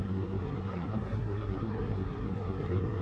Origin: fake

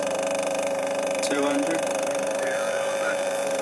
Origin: fake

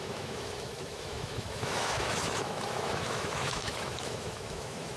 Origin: fake